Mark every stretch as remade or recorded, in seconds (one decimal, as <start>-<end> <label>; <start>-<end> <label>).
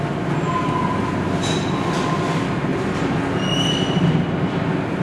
0.0-5.0 recorded